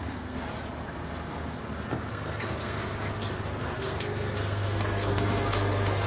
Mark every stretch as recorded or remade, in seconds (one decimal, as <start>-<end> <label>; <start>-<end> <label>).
0.0-0.4 remade; 0.4-2.1 recorded; 2.1-2.8 remade; 2.8-3.4 recorded; 3.4-6.1 remade